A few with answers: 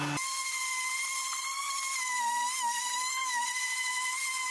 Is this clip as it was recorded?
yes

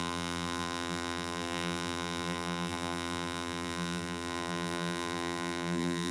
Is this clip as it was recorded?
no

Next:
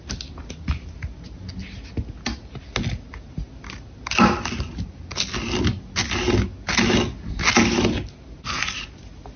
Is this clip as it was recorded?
yes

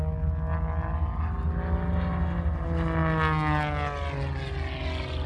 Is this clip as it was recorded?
yes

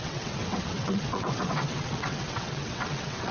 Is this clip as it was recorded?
no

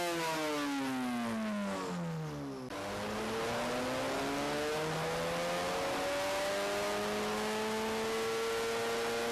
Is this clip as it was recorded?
yes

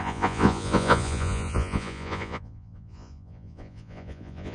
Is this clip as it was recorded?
no